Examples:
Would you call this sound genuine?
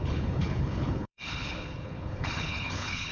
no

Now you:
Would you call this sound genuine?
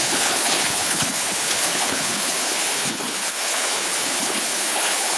no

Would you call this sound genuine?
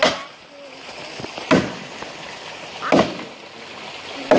yes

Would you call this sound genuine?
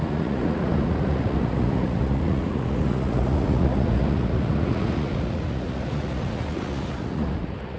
no